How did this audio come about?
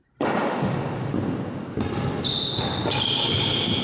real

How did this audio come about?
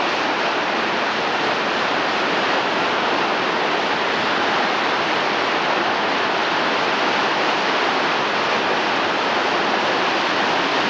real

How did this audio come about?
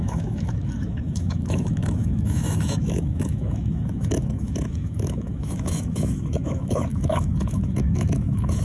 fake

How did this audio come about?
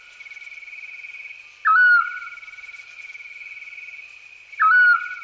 real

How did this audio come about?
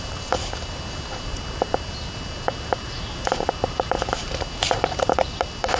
fake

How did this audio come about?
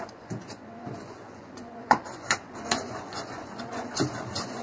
fake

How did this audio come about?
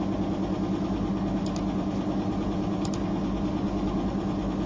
real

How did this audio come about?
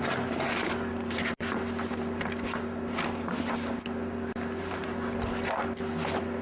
real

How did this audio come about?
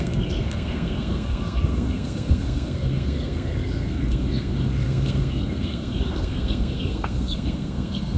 fake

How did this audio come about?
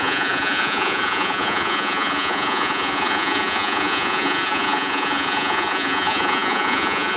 fake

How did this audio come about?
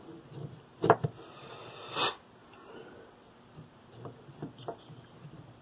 real